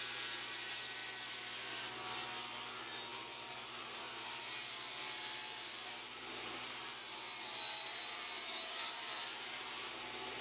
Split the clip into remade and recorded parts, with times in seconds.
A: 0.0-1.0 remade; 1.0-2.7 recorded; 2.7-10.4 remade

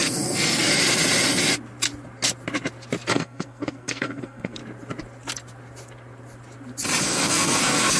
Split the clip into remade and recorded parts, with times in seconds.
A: 0.0-0.7 remade; 0.7-3.1 recorded; 3.1-4.6 remade; 4.6-7.0 recorded; 7.0-8.0 remade

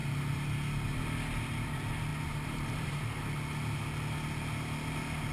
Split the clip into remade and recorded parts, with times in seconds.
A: 0.0-2.1 recorded; 2.1-3.0 remade; 3.0-5.3 recorded